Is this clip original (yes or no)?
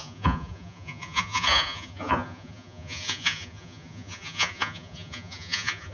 no